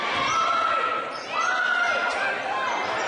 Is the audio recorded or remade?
recorded